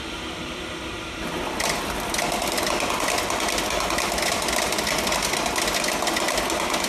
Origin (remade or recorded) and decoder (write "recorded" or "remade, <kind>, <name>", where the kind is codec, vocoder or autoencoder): recorded